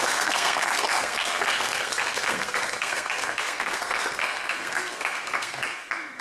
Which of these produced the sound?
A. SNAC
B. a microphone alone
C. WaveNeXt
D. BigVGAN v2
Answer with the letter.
A